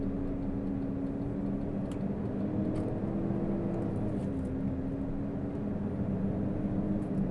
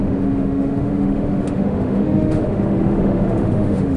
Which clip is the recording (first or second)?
first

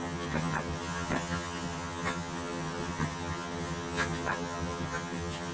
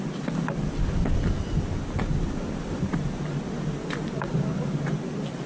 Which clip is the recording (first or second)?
second